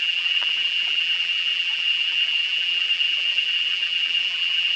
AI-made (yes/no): yes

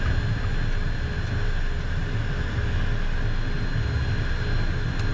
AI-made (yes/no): no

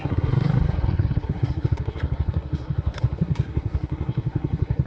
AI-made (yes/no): yes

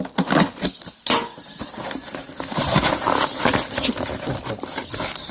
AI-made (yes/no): no